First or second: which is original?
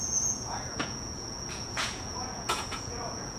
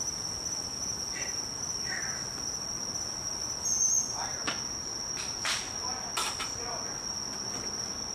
second